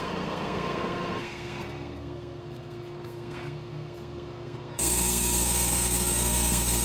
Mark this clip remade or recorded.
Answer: remade